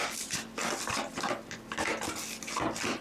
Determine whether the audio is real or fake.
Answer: real